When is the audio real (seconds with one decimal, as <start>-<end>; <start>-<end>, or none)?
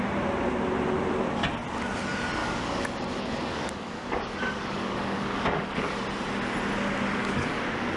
0.0-2.4; 6.0-7.2